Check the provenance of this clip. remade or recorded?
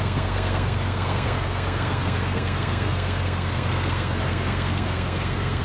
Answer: remade